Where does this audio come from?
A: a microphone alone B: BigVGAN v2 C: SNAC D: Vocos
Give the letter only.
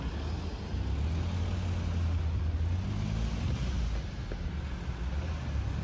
A